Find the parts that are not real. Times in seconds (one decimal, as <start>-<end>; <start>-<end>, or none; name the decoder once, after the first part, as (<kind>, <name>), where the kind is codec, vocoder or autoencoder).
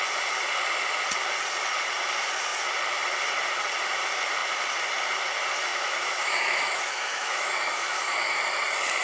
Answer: 5.7-8.4 (autoencoder, DAC-VAE)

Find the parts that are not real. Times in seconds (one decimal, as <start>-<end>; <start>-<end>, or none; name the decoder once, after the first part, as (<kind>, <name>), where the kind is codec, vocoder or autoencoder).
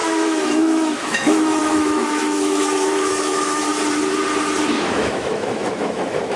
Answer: 0.0-3.7 (autoencoder, DAC-VAE); 4.7-6.4